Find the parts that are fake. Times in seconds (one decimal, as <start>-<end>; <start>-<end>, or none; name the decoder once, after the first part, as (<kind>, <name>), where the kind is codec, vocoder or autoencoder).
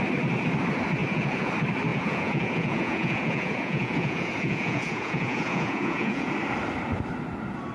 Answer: 1.0-1.5 (vocoder, Vocos); 1.9-6.3